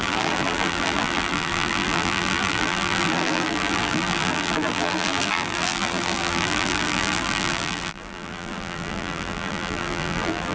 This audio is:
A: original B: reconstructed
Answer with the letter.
B